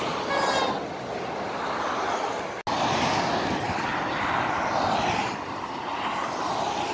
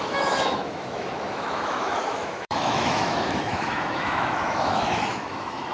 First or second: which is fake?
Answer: second